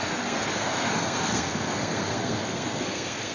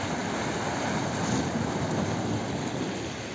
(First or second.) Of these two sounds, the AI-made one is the first